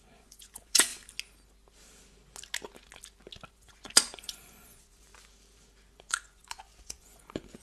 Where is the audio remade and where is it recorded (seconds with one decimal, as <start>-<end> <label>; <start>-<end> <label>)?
0.0-0.9 remade; 0.9-3.5 recorded; 3.5-5.1 remade; 5.1-5.9 recorded; 5.9-7.6 remade